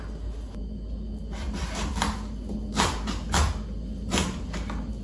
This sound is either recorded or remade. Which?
recorded